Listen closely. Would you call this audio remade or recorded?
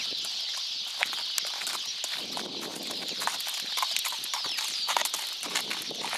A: recorded